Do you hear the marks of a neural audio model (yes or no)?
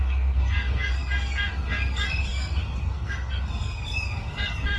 yes